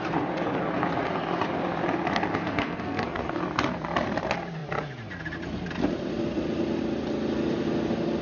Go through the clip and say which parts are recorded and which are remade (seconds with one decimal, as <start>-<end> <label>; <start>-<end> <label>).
0.0-2.3 recorded; 2.3-3.4 remade; 3.4-8.2 recorded

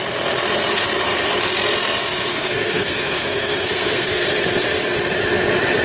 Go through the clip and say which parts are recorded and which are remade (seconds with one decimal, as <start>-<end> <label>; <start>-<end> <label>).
0.0-2.3 recorded; 2.3-4.3 remade; 4.3-5.8 recorded

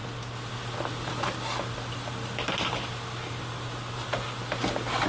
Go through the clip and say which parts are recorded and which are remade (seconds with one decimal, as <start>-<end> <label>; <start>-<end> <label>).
0.0-5.1 recorded

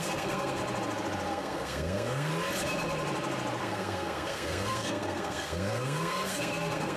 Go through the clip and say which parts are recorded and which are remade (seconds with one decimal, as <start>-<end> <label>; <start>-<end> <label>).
0.0-0.6 remade; 0.6-1.3 recorded; 1.3-2.3 remade; 2.3-3.6 recorded; 3.6-7.0 remade